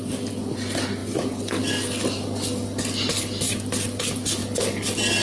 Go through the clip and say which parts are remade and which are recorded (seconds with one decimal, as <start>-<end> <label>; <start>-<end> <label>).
0.0-5.2 recorded

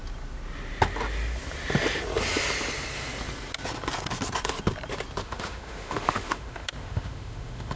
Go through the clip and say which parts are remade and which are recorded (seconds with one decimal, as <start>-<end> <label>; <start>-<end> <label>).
0.0-5.2 recorded; 5.2-7.8 remade

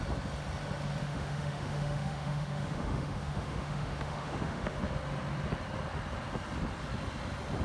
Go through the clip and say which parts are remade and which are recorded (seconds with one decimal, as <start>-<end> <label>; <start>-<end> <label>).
0.0-1.0 recorded; 1.0-4.8 remade; 4.8-7.6 recorded

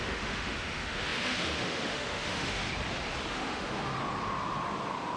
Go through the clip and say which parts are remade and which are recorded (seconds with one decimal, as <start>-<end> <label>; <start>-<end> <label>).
0.0-2.6 remade; 2.6-3.3 recorded; 3.3-4.0 remade; 4.0-5.2 recorded